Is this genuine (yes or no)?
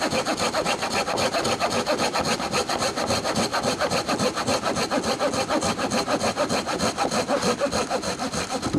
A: yes